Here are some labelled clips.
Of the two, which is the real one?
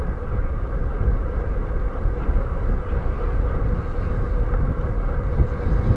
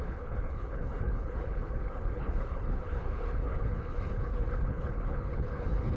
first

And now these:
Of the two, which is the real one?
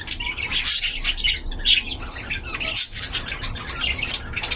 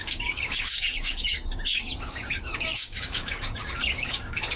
first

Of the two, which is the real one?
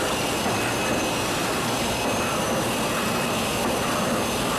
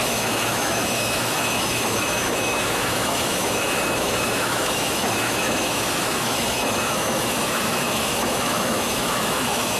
first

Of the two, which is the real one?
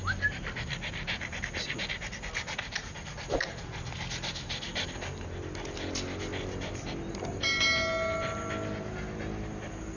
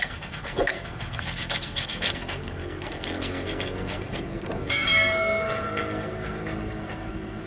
first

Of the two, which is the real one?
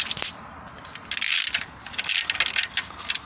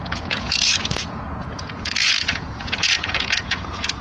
first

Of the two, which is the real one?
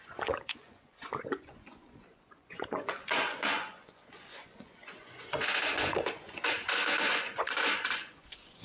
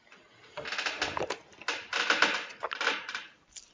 second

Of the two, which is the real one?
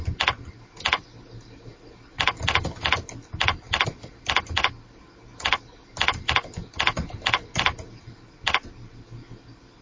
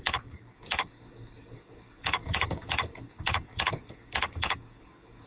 first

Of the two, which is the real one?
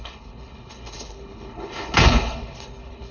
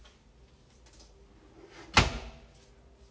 second